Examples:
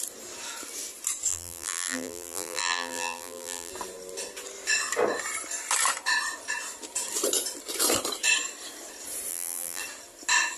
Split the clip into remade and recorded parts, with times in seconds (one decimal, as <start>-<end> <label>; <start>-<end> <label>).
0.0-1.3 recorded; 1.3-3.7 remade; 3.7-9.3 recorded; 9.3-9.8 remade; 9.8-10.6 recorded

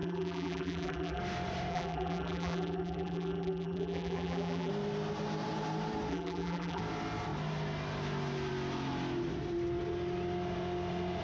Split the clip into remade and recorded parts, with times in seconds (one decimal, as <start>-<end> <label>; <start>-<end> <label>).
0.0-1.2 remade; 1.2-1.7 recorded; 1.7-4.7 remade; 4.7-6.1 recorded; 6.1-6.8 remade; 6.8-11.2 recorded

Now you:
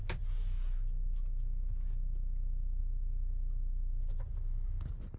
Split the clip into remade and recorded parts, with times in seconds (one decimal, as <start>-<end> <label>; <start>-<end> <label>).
0.0-5.2 recorded

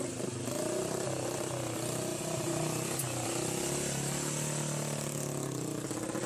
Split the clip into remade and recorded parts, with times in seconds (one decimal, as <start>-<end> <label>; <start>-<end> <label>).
0.0-6.3 recorded

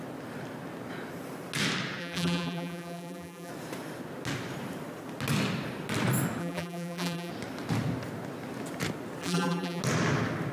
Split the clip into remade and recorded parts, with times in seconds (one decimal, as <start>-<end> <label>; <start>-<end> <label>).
0.0-2.0 recorded; 2.0-3.5 remade; 3.5-6.4 recorded; 6.4-7.3 remade; 7.3-9.2 recorded; 9.2-9.8 remade; 9.8-10.5 recorded

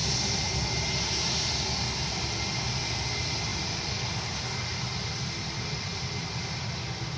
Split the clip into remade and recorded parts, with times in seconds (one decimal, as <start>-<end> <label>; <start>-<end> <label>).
0.0-0.9 remade; 0.9-4.9 recorded; 4.9-6.2 remade; 6.2-7.2 recorded

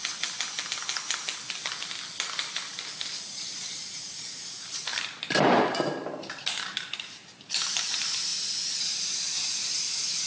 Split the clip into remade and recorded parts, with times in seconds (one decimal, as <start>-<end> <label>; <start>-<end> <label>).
0.0-3.2 recorded; 3.2-8.3 remade; 8.3-8.8 recorded; 8.8-10.3 remade